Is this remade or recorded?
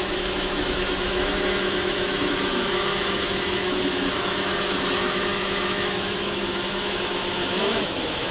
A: remade